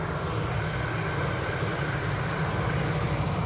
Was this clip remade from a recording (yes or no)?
no